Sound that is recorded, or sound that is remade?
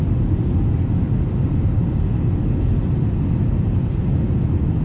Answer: recorded